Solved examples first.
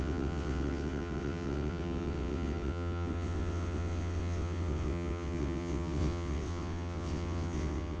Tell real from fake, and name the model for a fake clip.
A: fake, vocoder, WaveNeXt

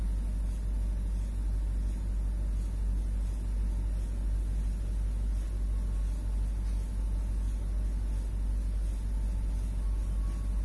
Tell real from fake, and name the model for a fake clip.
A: real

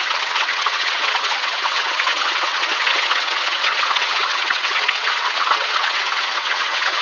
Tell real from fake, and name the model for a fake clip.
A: fake, vocoder, WaveNeXt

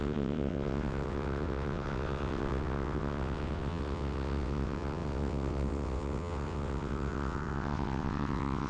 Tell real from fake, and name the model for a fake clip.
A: fake, vocoder, WaveNeXt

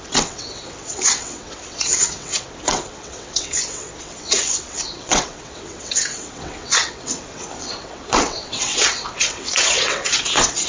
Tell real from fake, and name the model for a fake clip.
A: fake, vocoder, WaveNeXt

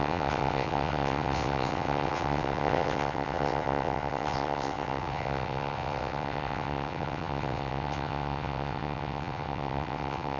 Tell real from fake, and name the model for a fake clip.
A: fake, vocoder, WaveNeXt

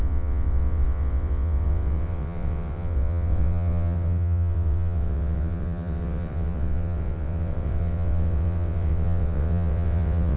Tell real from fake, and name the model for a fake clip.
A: fake, vocoder, WaveNeXt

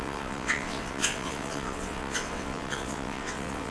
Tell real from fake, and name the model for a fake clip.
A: fake, vocoder, WaveNeXt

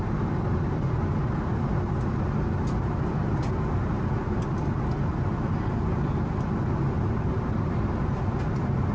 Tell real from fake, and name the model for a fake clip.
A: real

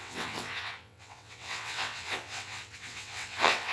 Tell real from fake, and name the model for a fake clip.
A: fake, vocoder, WaveNeXt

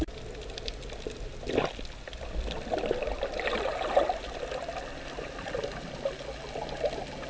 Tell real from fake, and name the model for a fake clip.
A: real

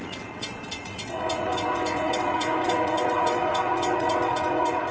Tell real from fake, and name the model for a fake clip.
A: fake, vocoder, WaveNeXt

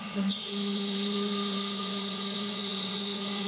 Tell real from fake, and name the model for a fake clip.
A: fake, vocoder, WaveNeXt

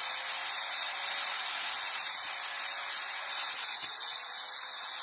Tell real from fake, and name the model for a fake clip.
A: real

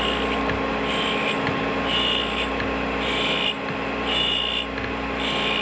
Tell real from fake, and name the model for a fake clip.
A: real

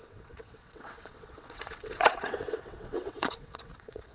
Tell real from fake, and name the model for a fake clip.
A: fake, vocoder, WaveNeXt